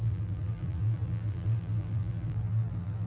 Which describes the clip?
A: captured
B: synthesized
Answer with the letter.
B